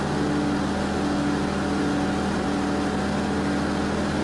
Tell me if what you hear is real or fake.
real